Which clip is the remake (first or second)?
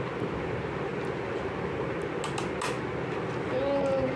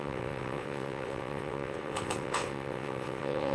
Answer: second